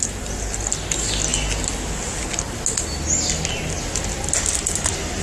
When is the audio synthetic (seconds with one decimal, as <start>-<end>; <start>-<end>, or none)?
none